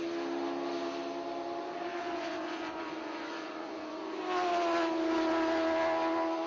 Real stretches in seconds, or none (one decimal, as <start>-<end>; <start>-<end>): 0.0-1.6; 4.2-6.5